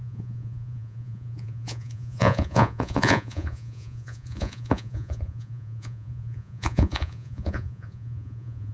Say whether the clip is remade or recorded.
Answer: remade